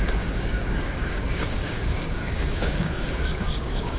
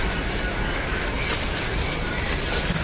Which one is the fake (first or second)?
first